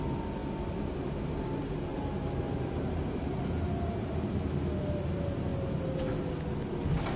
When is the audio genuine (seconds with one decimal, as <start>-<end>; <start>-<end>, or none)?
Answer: 0.0-1.9; 4.4-7.2